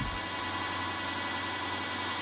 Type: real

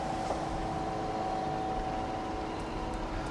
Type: real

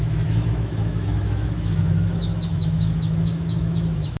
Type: fake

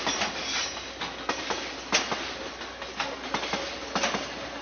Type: real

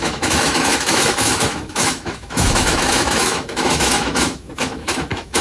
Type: fake